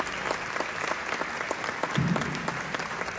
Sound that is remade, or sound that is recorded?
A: recorded